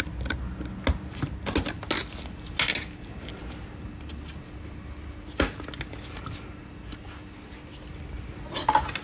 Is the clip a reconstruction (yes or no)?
no